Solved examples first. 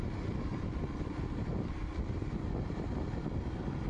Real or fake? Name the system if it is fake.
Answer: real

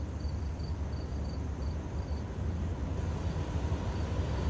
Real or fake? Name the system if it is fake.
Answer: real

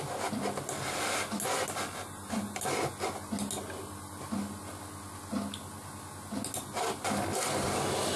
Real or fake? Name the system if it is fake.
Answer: real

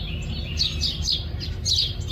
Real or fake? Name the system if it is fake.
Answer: fake, vocoder, BigVGAN v2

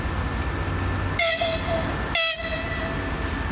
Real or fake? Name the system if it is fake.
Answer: real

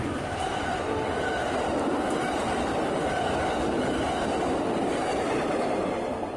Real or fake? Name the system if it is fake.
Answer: real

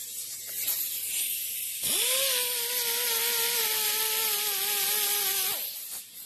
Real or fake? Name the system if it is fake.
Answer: real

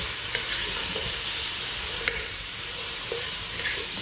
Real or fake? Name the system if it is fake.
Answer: fake, vocoder, BigVGAN v2